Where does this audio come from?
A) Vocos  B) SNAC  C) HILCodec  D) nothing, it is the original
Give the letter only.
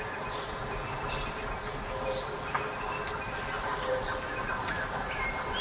D